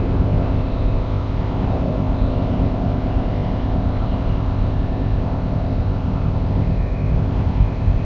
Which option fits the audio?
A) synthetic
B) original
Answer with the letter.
A